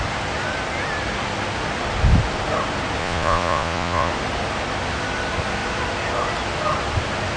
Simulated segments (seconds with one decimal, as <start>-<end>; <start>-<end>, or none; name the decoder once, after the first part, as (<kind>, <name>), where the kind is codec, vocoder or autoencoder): 3.0-4.1 (vocoder, Vocos)